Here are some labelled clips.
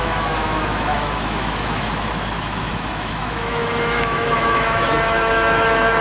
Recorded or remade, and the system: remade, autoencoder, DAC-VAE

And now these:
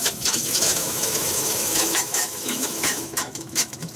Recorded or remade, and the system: remade, autoencoder, DAC-VAE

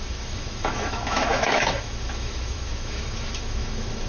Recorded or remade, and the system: remade, autoencoder, DAC-VAE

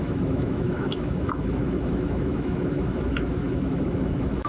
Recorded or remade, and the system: remade, autoencoder, DAC-VAE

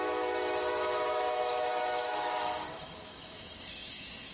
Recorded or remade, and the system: remade, autoencoder, DAC-VAE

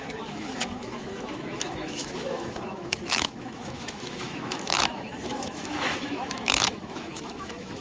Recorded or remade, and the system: remade, autoencoder, DAC-VAE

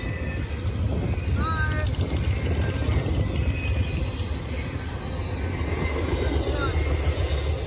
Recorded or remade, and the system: recorded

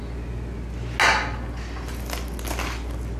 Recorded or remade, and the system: recorded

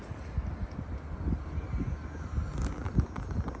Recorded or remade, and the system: recorded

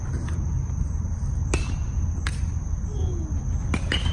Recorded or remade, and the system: recorded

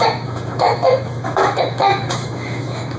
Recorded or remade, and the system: remade, autoencoder, DAC-VAE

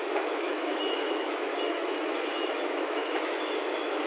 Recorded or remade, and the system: remade, autoencoder, DAC-VAE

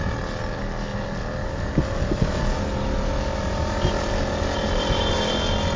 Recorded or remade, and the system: recorded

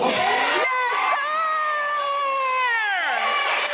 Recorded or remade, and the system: recorded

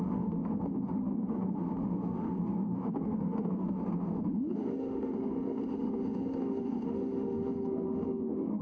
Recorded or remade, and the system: remade, autoencoder, DAC-VAE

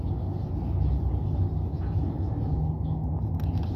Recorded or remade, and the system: recorded